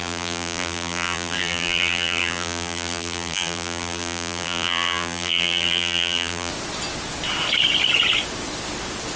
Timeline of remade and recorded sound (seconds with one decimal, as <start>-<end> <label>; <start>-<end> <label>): 0.0-6.5 remade; 6.5-9.2 recorded